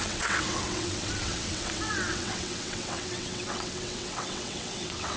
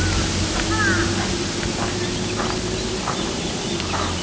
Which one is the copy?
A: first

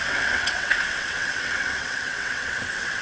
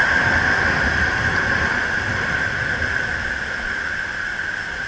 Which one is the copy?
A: first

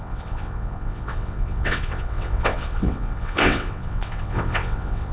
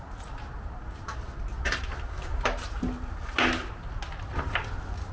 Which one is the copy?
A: first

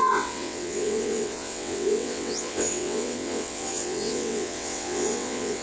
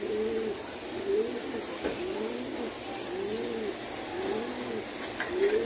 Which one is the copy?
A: first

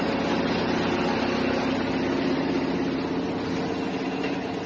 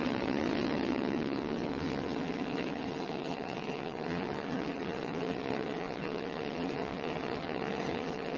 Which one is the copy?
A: second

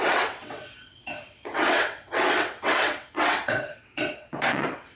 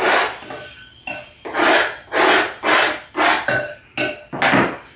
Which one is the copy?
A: first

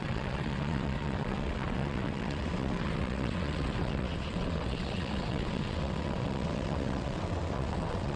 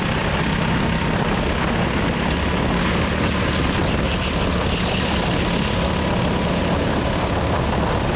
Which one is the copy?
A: first